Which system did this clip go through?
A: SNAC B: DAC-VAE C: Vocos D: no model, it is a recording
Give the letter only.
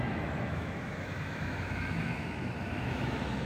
B